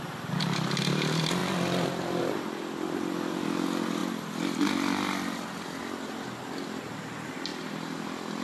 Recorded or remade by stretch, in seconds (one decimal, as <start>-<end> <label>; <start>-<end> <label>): 0.0-8.4 recorded